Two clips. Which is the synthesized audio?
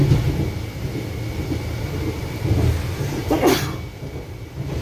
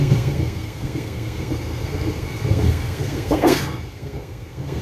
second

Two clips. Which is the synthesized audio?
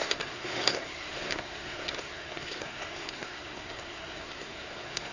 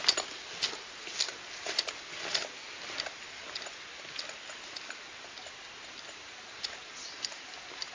first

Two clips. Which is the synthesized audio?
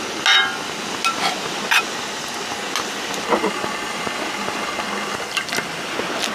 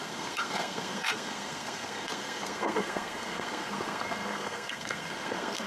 second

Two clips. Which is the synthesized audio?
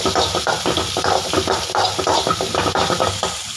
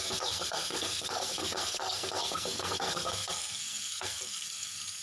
second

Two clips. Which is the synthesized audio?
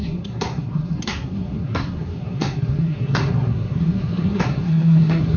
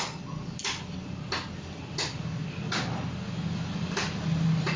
first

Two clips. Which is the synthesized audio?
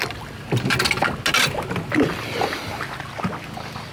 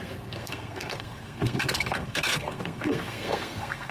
second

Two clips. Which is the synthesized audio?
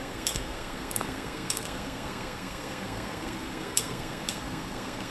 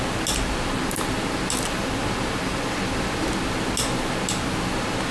first